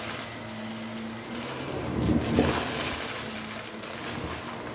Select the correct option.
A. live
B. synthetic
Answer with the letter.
A